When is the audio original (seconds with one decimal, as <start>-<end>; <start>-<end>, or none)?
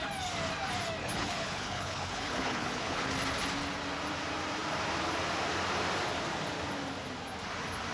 0.0-1.0; 3.1-7.9